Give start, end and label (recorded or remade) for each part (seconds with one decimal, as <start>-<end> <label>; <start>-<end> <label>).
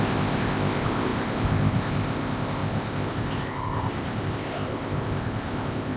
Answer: 0.0-6.0 remade